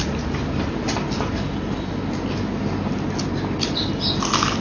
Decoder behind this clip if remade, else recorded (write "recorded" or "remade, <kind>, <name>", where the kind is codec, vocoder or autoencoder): recorded